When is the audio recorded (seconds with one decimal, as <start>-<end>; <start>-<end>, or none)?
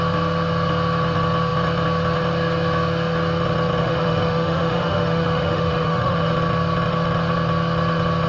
0.0-3.8; 6.3-8.3